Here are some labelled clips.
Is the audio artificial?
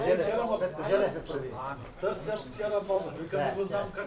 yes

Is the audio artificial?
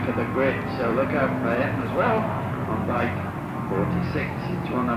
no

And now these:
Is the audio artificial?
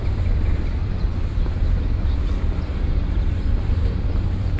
yes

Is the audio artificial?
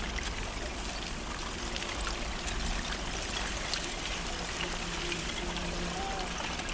no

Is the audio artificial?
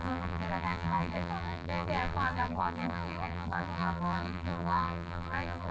yes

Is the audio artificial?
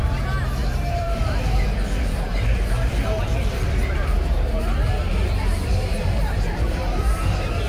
yes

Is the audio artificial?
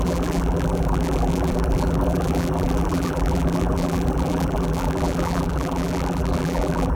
yes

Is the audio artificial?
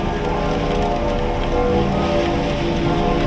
no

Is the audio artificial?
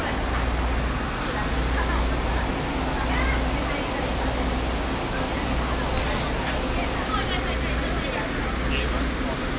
no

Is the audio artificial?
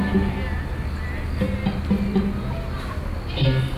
no